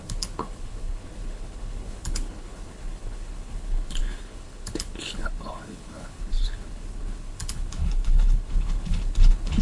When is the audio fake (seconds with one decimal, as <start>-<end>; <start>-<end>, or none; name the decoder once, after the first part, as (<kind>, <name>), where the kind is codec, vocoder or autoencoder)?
0.0-9.6 (codec, HILCodec)